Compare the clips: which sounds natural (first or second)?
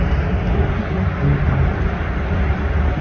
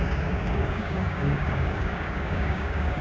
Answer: first